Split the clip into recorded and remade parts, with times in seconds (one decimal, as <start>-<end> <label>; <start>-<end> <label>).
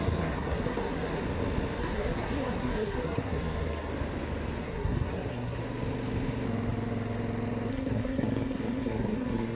0.0-1.2 remade; 1.2-1.8 recorded; 1.8-3.9 remade; 3.9-4.6 recorded; 4.6-5.6 remade; 5.6-7.7 recorded; 7.7-9.5 remade